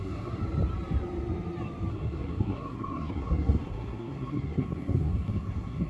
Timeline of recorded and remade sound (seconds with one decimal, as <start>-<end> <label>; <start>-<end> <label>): 0.0-0.4 remade; 0.4-1.9 recorded; 1.9-5.9 remade

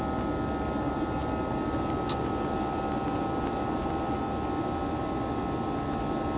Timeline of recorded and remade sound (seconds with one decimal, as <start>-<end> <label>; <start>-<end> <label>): 0.0-6.4 recorded

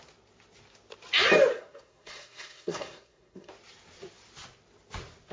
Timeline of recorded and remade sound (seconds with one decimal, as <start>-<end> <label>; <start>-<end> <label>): 0.0-1.5 recorded; 1.5-3.5 remade; 3.5-5.3 recorded

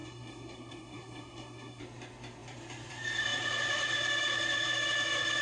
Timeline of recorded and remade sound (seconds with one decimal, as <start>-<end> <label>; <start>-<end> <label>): 0.0-1.8 remade; 1.8-5.4 recorded